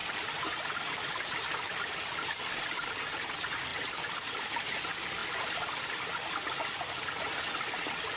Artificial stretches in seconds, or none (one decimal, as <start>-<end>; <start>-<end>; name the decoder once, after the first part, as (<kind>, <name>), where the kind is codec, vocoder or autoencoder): 1.6-5.2 (vocoder, BigVGAN v2); 6.9-8.2